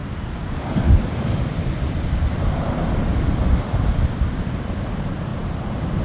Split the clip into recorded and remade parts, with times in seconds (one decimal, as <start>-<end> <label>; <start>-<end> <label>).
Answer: 0.0-5.3 remade; 5.3-6.0 recorded